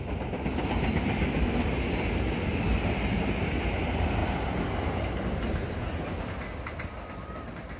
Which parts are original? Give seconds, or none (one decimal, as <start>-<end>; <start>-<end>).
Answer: 0.0-7.8